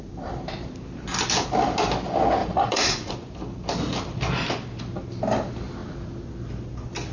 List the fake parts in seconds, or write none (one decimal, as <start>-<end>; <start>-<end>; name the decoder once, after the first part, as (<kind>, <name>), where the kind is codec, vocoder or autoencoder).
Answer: 2.4-3.1 (vocoder, Vocos)